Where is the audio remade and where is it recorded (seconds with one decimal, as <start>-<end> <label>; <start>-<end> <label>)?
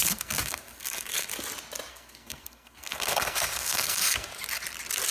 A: 0.0-1.3 remade; 1.3-1.9 recorded; 1.9-4.3 remade; 4.3-5.1 recorded